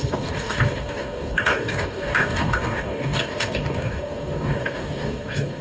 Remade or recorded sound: remade